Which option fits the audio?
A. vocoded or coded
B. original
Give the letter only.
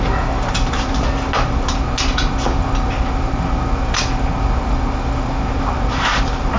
B